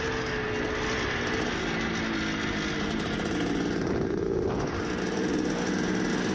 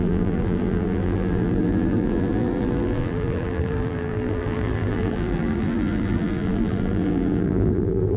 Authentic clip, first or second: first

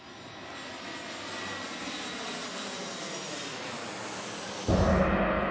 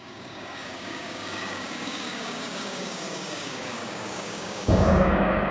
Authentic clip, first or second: first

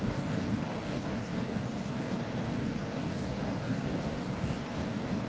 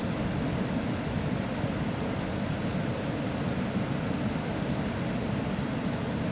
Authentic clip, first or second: second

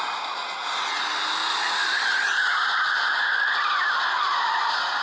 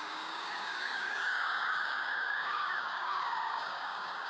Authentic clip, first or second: first